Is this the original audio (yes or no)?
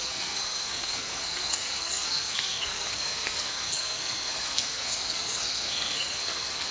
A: no